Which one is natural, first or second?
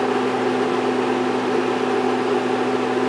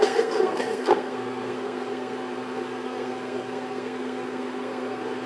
first